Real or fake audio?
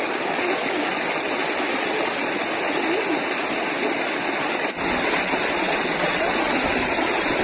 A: real